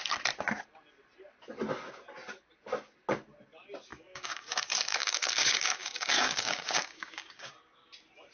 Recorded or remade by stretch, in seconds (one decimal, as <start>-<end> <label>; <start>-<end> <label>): 0.0-3.9 recorded; 3.9-7.5 remade; 7.5-8.3 recorded